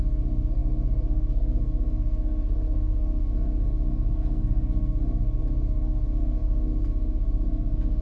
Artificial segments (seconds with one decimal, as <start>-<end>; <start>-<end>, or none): 0.0-8.0